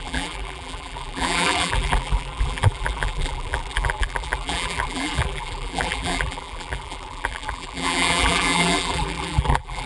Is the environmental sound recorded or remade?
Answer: remade